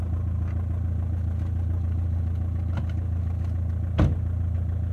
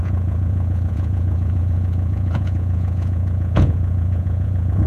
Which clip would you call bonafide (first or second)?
first